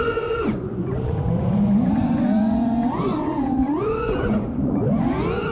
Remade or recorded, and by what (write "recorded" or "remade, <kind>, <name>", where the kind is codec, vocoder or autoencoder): remade, vocoder, Vocos